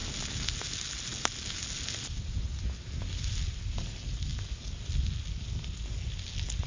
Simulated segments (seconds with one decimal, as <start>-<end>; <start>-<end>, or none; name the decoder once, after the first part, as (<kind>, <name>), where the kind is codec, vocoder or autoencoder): 3.4-4.3 (vocoder, BigVGAN v2); 4.9-6.7